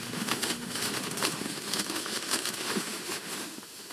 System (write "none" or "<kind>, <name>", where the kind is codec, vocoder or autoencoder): autoencoder, DAC-VAE